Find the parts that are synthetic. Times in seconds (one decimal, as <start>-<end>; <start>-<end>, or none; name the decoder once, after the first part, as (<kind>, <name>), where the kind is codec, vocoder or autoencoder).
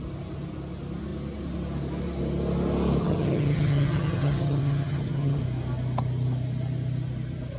3.0-5.4 (vocoder, HiFi-GAN)